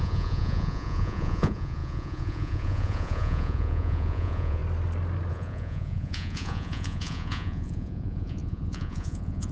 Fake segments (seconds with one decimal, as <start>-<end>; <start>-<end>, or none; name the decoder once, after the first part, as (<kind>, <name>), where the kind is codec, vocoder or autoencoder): 0.0-4.6 (vocoder, Vocos); 5.3-9.5